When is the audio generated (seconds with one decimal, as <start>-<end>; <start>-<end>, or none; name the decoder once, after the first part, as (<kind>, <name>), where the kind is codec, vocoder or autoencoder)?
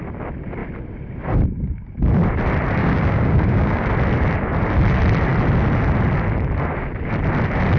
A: 2.8-3.9 (codec, DAC)